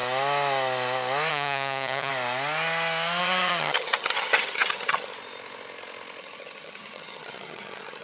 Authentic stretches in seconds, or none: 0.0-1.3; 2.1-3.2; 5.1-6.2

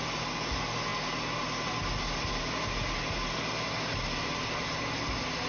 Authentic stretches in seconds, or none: 0.0-5.5

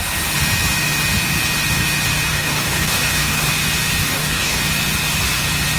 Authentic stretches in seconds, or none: 0.0-2.3; 3.5-4.1; 4.6-5.8

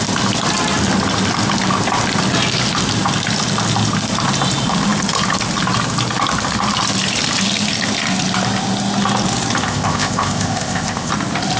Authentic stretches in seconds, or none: 0.0-9.6; 11.1-11.6

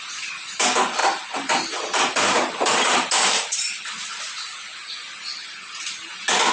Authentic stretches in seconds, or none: 0.0-1.0; 4.2-6.5

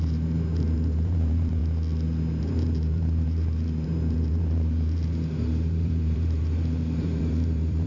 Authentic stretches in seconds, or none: 1.6-2.4

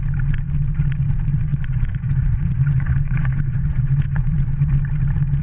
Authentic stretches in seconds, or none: 0.0-1.5; 4.7-5.4